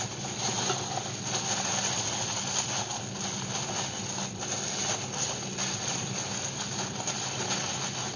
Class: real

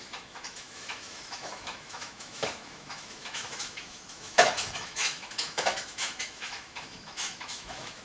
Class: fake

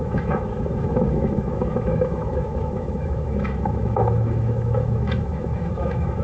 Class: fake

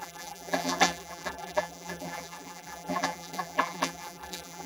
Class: fake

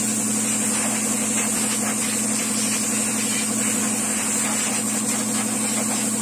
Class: real